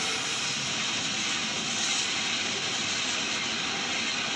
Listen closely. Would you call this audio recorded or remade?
recorded